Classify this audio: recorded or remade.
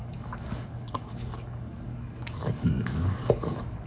remade